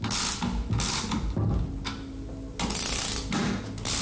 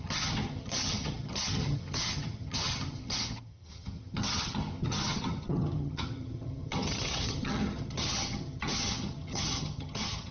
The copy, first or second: second